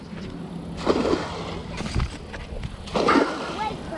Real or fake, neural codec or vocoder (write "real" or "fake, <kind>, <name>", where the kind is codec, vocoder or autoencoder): real